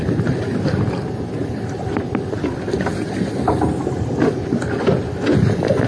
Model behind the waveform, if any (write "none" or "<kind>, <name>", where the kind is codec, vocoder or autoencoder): none